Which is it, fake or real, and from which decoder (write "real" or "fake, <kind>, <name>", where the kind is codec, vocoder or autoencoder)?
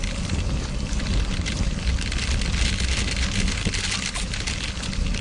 real